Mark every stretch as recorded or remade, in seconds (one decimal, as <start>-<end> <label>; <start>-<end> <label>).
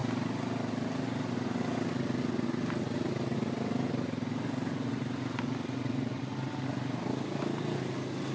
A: 0.0-8.3 recorded